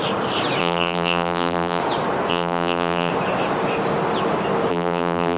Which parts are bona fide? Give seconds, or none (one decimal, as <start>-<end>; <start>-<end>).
0.0-0.6; 1.8-2.3; 3.1-4.7